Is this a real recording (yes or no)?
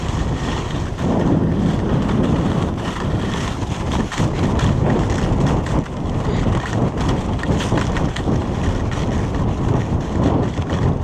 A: yes